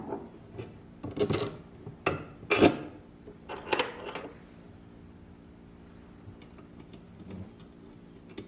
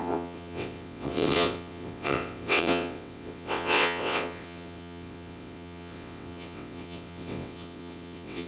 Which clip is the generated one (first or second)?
second